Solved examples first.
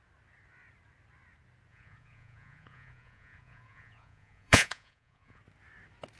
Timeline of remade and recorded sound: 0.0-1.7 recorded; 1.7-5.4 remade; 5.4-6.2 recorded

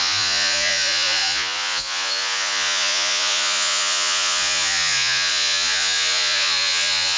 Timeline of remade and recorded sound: 0.0-7.2 remade

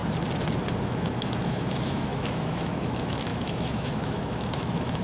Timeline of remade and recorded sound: 0.0-0.8 recorded; 0.8-5.0 remade

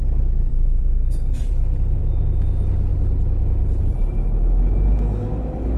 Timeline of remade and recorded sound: 0.0-0.5 recorded; 0.5-2.0 remade; 2.0-5.8 recorded